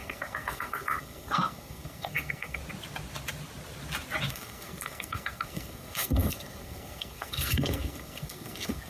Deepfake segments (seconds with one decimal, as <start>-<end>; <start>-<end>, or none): 0.0-2.6; 4.3-8.9